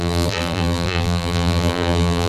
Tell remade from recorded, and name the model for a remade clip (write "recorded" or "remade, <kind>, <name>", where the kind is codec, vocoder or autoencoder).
remade, vocoder, BigVGAN v2